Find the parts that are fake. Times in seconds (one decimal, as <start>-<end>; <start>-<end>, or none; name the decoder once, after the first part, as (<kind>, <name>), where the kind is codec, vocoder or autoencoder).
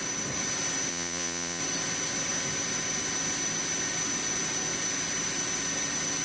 0.9-1.6 (vocoder, Vocos)